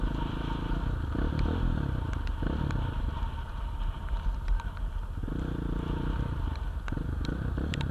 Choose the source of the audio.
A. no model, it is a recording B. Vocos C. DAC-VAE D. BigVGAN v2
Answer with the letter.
D